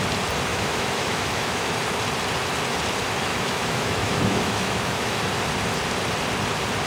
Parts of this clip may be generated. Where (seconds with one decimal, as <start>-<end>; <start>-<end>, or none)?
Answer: 0.5-1.7; 3.3-5.2